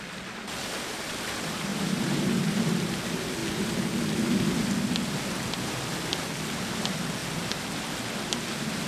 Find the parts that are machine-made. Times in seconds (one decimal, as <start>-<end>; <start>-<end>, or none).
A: 1.7-2.4